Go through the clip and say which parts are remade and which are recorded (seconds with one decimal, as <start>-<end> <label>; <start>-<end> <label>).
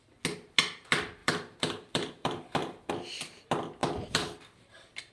0.0-1.2 recorded; 1.2-2.9 remade; 2.9-5.1 recorded